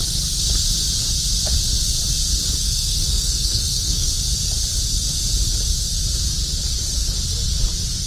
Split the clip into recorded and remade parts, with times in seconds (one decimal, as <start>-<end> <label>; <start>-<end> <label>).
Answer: 0.0-2.6 recorded; 2.6-4.1 remade; 4.1-8.1 recorded